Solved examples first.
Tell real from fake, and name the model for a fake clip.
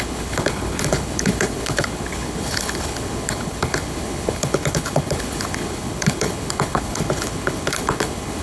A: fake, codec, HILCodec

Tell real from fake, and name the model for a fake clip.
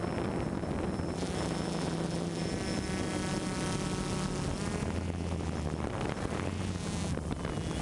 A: real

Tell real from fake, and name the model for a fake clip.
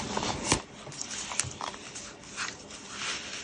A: real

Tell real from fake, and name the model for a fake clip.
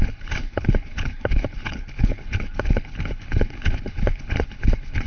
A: fake, codec, HILCodec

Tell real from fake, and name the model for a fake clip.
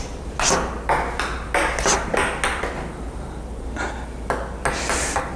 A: real